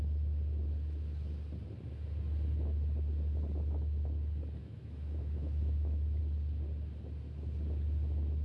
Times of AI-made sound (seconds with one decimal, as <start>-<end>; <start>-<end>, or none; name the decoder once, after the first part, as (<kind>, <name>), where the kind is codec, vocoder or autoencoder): 4.6-6.2 (autoencoder, DAC-VAE)